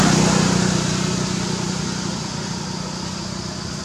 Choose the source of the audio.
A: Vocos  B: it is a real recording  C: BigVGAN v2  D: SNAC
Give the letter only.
B